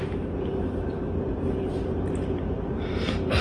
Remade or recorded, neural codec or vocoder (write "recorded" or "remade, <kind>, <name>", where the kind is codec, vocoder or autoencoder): recorded